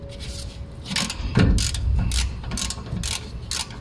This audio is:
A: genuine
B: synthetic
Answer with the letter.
A